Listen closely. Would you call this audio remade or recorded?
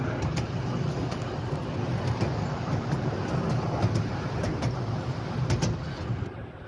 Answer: recorded